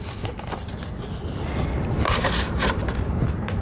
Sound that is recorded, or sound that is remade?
recorded